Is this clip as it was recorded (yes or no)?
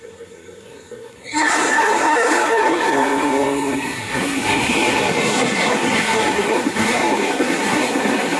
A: no